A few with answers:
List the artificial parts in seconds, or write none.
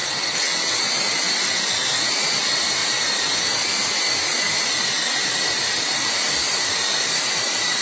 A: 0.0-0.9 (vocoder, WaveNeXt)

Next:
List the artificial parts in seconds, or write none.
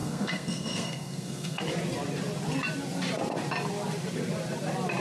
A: 0.0-1.6 (codec, SNAC)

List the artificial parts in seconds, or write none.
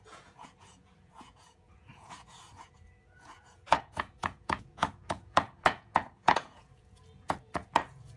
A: 0.0-8.2 (vocoder, Vocos)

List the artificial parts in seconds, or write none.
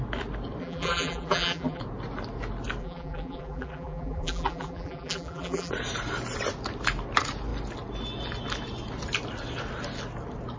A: 0.6-1.8 (vocoder, BigVGAN v2); 2.8-5.7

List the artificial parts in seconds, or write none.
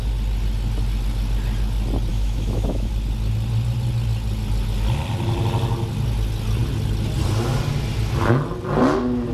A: 2.1-2.9 (autoencoder, DAC-VAE)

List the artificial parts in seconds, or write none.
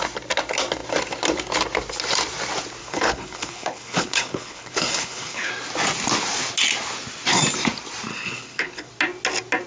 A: 2.8-5.5 (codec, HILCodec); 8.1-8.9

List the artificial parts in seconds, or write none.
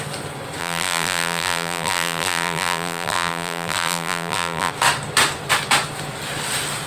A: 0.6-4.7 (vocoder, BigVGAN v2)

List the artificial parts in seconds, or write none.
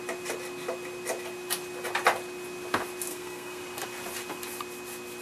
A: 3.1-3.6 (codec, SNAC)